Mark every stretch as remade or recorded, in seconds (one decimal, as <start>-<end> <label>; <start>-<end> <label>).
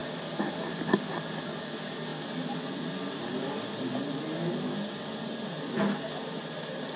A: 0.0-7.0 recorded